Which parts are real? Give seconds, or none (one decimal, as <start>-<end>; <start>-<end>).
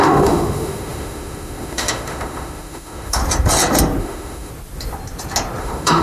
3.2-4.0; 4.5-5.6